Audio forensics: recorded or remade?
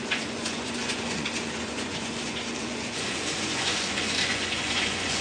remade